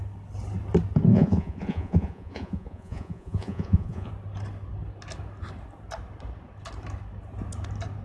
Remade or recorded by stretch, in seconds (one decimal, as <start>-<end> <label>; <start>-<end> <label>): 0.0-1.1 recorded; 1.1-4.1 remade; 4.1-8.0 recorded